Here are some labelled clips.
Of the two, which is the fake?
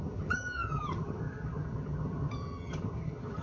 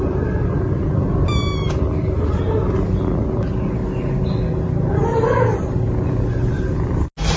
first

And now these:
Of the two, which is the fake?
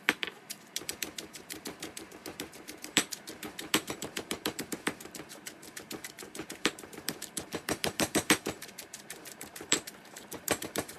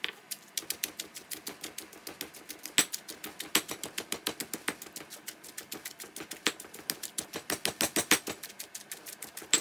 first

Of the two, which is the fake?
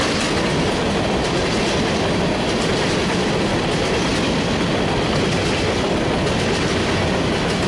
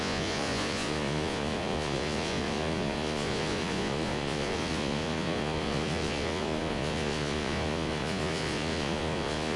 second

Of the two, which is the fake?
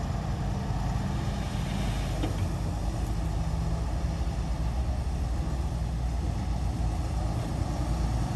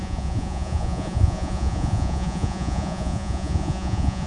second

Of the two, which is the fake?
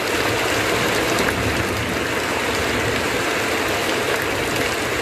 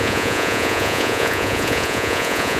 second